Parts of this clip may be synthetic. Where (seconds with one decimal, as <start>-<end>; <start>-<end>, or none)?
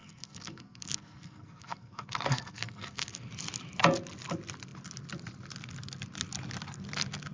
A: 0.0-3.3